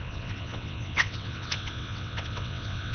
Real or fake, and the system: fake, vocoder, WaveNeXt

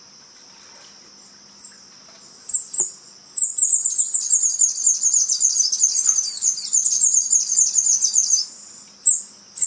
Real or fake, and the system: real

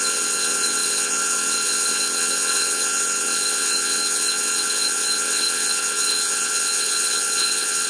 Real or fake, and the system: fake, vocoder, WaveNeXt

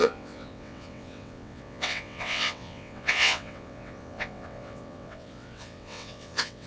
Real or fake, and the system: fake, vocoder, WaveNeXt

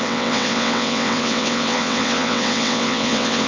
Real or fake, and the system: fake, vocoder, WaveNeXt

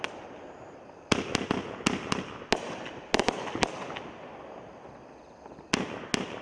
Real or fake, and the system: real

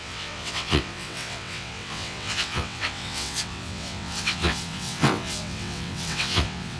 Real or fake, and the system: fake, vocoder, WaveNeXt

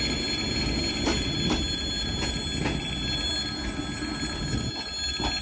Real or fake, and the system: real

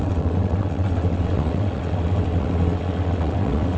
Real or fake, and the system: fake, vocoder, WaveNeXt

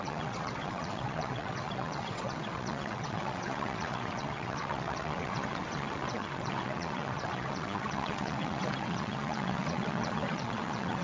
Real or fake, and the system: fake, vocoder, WaveNeXt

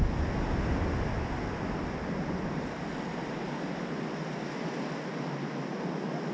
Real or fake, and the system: real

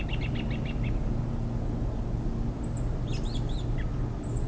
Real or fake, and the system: real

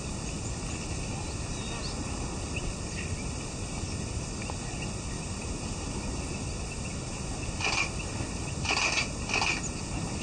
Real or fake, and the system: real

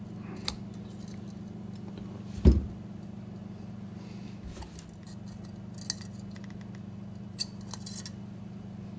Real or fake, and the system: real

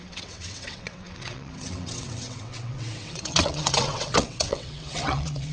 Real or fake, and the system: fake, vocoder, WaveNeXt